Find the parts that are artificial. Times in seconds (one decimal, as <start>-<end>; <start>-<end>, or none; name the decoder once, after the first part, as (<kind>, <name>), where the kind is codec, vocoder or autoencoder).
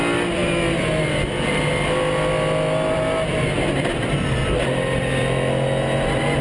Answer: none